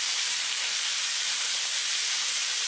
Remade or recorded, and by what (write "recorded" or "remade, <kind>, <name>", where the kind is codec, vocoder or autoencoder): remade, vocoder, BigVGAN v2